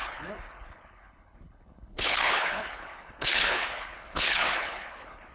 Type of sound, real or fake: fake